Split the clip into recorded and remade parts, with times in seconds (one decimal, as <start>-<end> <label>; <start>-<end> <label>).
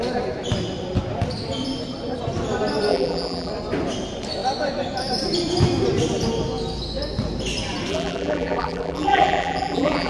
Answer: 0.0-2.9 recorded; 2.9-3.5 remade; 3.5-7.9 recorded; 7.9-10.1 remade